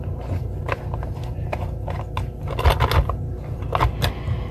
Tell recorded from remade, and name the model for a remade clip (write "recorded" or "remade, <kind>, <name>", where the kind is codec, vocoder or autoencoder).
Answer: recorded